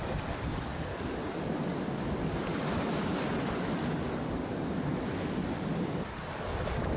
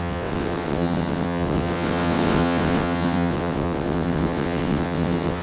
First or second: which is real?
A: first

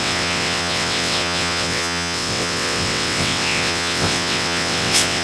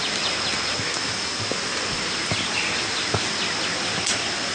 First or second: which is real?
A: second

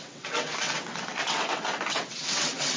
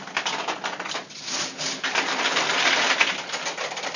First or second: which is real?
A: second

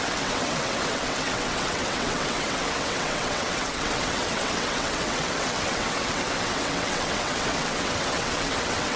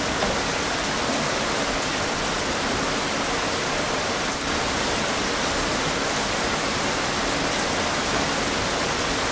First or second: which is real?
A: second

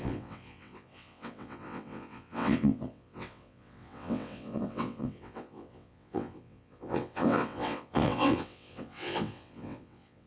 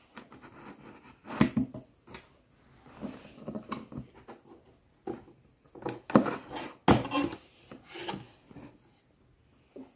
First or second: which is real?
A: second